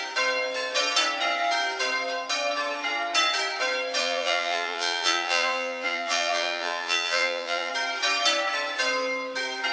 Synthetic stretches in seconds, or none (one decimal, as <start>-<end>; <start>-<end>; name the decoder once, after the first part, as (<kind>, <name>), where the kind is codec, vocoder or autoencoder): 4.0-7.7 (vocoder, Vocos)